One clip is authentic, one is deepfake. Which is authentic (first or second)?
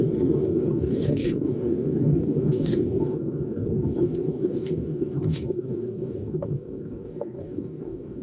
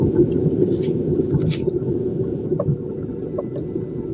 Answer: second